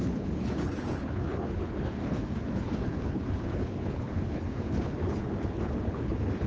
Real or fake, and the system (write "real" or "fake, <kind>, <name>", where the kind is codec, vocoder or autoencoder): fake, codec, HILCodec